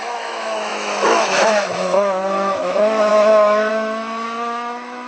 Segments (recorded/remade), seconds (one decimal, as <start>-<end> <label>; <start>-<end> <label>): 0.0-5.1 remade